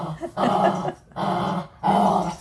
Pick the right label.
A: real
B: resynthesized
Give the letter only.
A